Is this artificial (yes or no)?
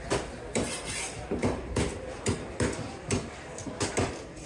yes